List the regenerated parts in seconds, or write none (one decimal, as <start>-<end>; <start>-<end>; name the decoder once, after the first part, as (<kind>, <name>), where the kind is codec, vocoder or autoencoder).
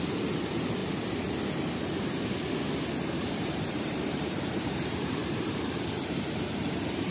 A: 0.0-0.8 (vocoder, BigVGAN v2); 3.1-7.1